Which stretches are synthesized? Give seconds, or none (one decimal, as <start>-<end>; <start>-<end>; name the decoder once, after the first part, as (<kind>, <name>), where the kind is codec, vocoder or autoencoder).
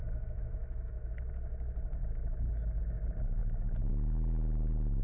0.0-1.1 (autoencoder, DAC-VAE); 2.0-2.8; 3.4-3.9